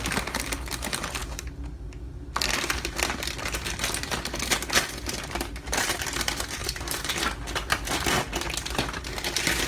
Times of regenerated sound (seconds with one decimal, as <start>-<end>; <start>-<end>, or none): 6.6-7.1